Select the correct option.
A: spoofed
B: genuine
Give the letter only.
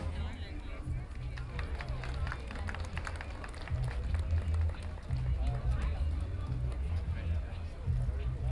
B